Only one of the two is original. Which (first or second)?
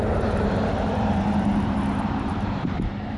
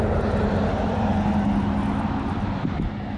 second